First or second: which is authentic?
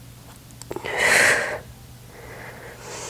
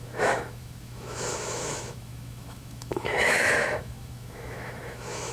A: first